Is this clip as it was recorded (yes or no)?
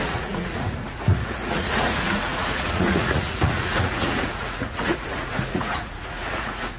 no